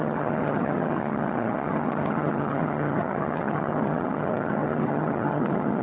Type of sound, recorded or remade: remade